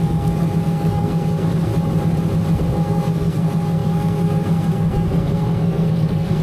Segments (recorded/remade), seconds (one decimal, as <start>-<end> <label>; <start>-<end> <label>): 0.0-1.7 remade; 1.7-2.5 recorded; 2.5-6.4 remade